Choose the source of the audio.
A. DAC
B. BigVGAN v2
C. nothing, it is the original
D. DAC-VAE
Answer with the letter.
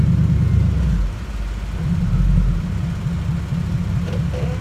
C